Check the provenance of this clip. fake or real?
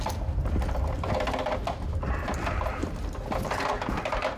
fake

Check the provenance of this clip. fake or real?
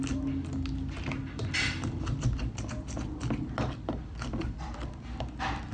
real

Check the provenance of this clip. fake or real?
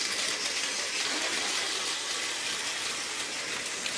real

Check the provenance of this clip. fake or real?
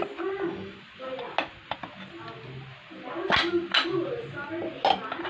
real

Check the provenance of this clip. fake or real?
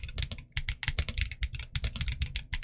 real